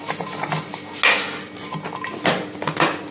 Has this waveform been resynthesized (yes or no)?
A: no